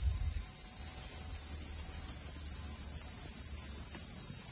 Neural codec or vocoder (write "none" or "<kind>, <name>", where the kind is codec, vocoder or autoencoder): none